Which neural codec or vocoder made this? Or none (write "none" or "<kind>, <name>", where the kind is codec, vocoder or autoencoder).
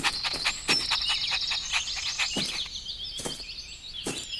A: none